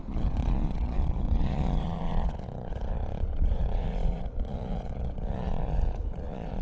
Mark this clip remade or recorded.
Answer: remade